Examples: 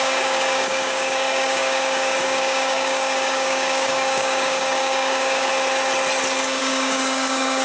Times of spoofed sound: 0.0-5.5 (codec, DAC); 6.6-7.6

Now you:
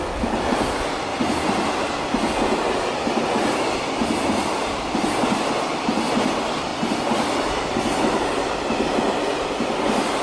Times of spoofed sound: none

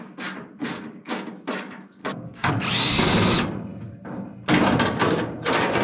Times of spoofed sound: 0.6-1.3 (codec, DAC); 2.0-2.5

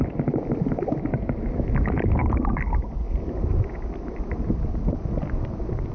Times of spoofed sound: none